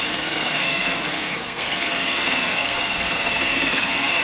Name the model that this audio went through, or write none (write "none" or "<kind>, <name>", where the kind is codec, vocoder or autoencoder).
codec, SNAC